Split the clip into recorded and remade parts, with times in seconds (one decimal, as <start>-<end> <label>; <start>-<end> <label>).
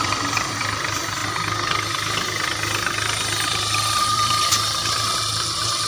0.0-1.2 remade; 1.2-3.6 recorded; 3.6-5.9 remade